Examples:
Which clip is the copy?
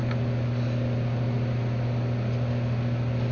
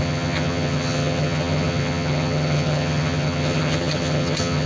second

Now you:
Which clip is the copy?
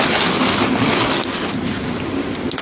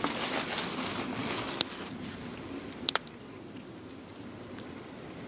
second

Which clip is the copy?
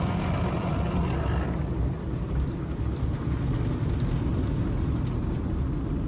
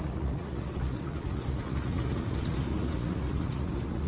second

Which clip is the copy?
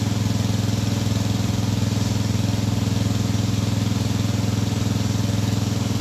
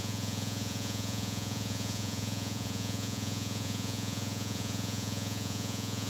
second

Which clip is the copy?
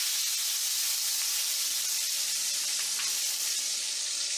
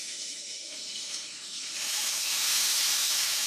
second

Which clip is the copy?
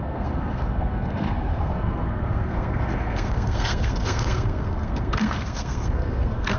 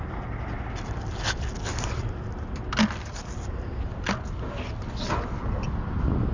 first